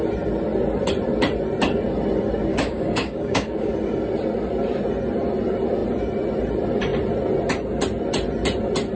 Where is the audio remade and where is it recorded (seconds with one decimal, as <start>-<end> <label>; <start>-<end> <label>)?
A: 0.0-2.5 recorded; 2.5-3.7 remade; 3.7-9.0 recorded